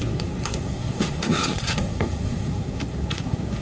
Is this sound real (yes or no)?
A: no